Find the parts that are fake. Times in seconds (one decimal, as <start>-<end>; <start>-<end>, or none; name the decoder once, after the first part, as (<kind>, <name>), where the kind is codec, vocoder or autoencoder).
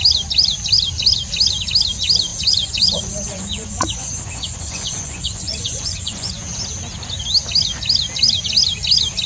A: 2.3-6.6 (vocoder, Vocos)